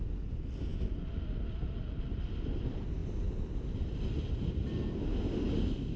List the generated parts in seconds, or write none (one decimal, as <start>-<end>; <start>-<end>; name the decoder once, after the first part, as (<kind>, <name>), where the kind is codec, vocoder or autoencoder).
none